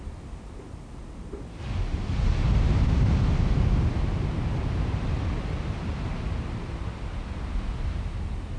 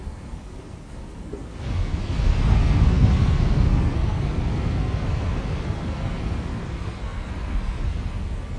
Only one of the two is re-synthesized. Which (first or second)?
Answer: second